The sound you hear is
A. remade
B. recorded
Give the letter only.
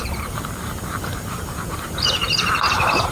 A